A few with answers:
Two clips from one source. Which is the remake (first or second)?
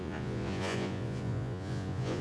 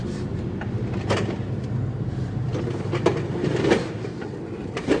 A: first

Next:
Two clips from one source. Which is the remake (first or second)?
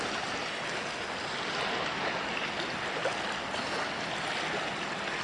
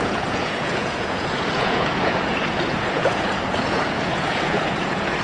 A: second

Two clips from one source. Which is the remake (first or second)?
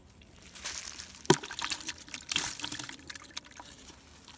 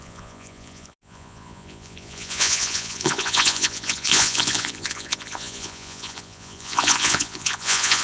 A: second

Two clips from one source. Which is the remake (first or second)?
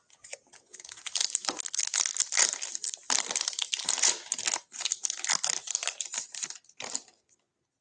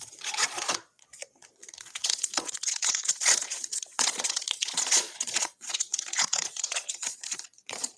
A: second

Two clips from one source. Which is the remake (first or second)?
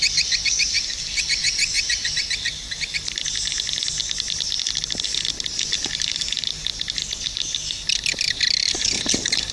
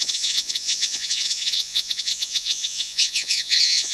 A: second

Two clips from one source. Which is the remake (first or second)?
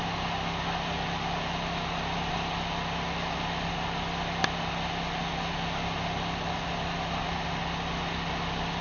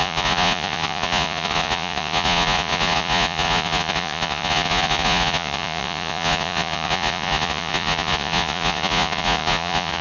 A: second